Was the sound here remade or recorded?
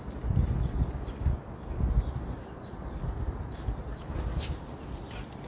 recorded